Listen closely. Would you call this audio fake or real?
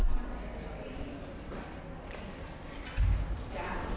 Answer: real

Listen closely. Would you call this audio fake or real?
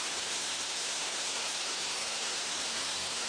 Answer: fake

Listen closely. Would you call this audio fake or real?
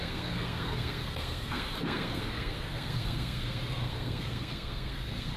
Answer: fake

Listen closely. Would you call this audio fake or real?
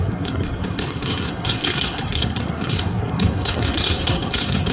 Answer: fake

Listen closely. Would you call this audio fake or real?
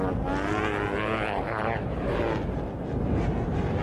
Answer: real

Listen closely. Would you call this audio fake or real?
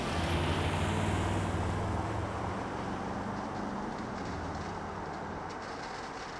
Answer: real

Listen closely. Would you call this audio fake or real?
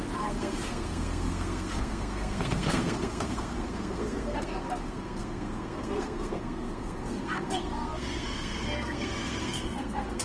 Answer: fake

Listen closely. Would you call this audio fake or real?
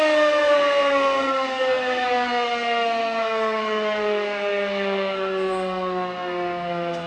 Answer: fake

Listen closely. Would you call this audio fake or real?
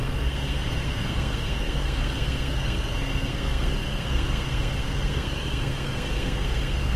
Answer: fake